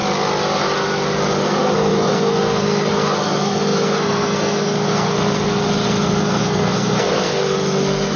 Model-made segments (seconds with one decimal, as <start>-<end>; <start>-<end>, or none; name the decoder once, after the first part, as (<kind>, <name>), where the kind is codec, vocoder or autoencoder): 1.4-8.2 (codec, SNAC)